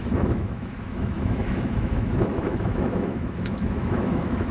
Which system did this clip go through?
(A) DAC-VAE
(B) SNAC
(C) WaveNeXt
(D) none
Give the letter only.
A